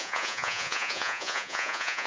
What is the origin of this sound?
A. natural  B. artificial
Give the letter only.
B